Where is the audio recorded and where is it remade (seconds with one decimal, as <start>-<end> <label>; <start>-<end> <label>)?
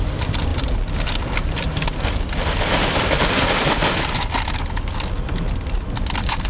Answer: 0.0-6.5 remade